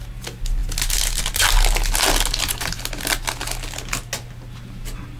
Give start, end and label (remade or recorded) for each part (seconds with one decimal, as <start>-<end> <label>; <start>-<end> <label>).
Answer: 0.0-5.2 recorded

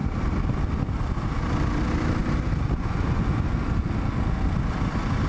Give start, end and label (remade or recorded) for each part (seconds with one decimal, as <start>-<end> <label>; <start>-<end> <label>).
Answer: 0.0-5.3 recorded

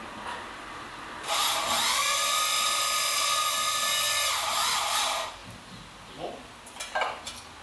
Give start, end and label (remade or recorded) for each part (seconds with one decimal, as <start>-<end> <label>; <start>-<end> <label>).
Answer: 0.0-7.6 recorded

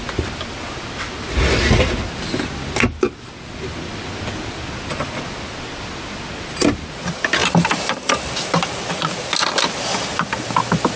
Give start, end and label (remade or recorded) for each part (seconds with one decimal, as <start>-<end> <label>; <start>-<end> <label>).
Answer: 0.0-7.4 recorded; 7.4-8.3 remade; 8.3-11.0 recorded

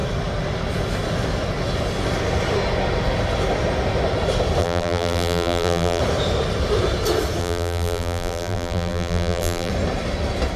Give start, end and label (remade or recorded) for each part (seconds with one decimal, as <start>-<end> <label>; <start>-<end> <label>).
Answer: 0.0-4.6 recorded; 4.6-6.0 remade; 6.0-7.4 recorded; 7.4-9.7 remade; 9.7-10.6 recorded